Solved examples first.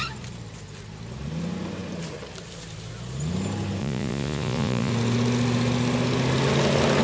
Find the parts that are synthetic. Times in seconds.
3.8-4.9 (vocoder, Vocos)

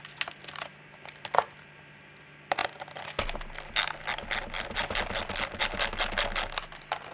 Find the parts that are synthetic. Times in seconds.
none

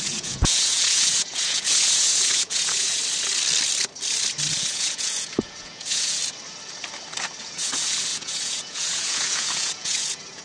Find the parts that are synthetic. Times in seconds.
0.0-3.0 (vocoder, Vocos); 4.5-6.2; 7.4-10.4

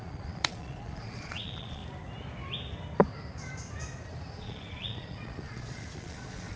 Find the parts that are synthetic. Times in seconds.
0.0-1.8 (vocoder, Vocos); 4.4-6.6

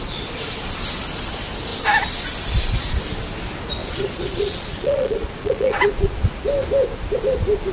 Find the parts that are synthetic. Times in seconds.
3.8-6.4 (vocoder, Vocos)

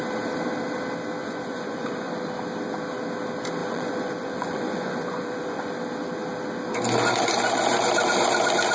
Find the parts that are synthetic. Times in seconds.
1.2-2.1 (vocoder, Vocos); 3.6-5.7

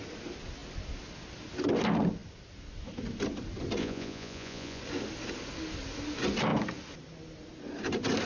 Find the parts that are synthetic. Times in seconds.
3.8-4.8 (vocoder, Vocos)

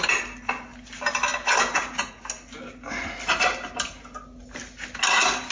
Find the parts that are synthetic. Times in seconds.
none